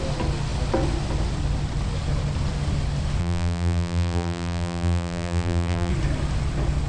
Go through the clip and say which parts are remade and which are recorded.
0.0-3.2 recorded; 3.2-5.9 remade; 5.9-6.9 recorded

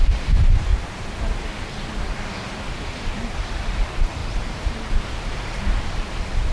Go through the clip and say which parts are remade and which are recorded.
0.0-0.7 remade; 0.7-2.5 recorded; 2.5-6.5 remade

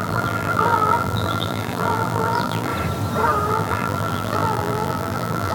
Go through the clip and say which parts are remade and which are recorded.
0.0-2.7 remade; 2.7-3.5 recorded; 3.5-5.5 remade

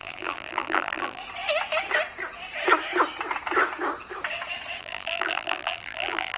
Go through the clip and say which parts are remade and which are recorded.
0.0-1.2 remade; 1.2-4.8 recorded; 4.8-6.4 remade

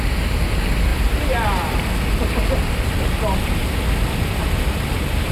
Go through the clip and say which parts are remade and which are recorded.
0.0-5.3 recorded

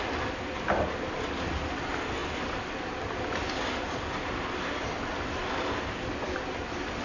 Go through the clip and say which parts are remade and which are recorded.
0.0-2.2 recorded; 2.2-2.8 remade; 2.8-3.4 recorded; 3.4-6.1 remade; 6.1-7.0 recorded

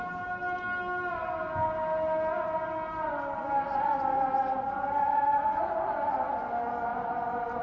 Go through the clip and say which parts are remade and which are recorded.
0.0-6.9 recorded; 6.9-7.6 remade

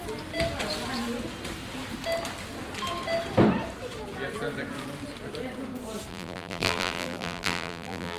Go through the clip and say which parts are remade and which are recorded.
0.0-6.1 recorded; 6.1-8.2 remade